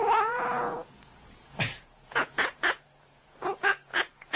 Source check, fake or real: fake